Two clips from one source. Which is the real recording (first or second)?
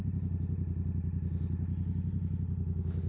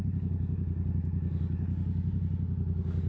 first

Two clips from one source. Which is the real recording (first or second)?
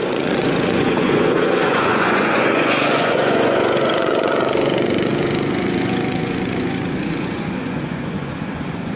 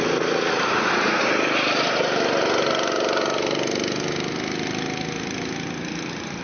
second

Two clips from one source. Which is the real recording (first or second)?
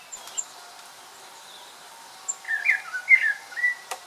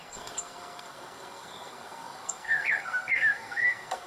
first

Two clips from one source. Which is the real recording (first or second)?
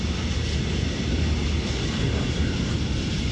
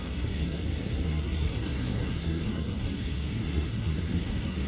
first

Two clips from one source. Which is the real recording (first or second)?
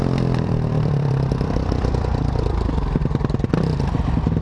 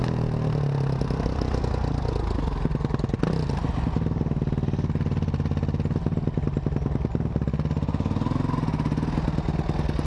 second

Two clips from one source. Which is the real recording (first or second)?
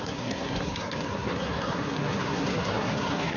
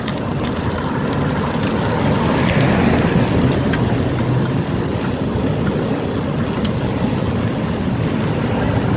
second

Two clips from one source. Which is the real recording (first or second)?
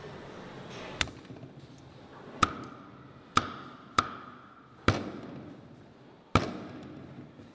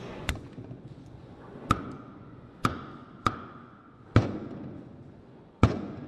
first